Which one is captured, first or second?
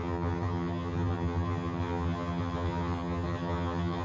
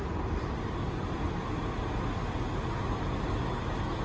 second